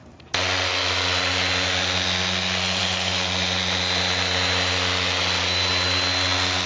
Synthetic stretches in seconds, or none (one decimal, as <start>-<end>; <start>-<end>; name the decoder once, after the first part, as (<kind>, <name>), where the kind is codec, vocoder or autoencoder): none